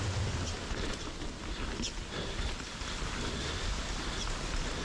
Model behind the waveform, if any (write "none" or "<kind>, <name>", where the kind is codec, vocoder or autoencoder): none